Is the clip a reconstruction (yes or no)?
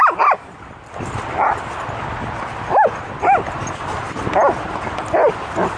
no